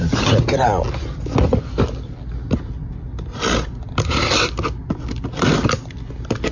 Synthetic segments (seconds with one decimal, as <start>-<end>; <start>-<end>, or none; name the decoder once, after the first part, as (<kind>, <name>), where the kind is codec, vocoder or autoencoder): none